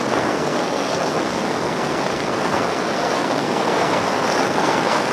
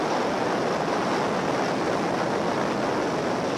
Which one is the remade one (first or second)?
first